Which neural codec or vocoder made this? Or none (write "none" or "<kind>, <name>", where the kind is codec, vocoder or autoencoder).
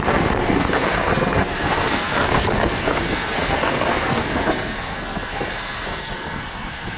codec, SNAC